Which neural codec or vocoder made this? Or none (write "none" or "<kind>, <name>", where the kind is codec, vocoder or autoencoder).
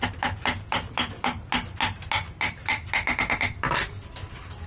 none